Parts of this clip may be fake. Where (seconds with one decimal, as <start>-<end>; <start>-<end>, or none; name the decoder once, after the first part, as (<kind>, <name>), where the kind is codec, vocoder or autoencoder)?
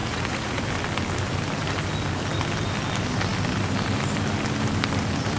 0.0-0.6 (vocoder, Vocos)